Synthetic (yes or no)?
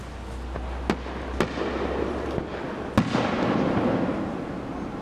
no